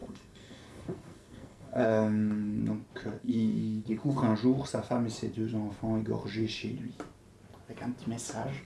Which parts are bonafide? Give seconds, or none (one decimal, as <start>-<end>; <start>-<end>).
2.6-3.2; 4.2-8.6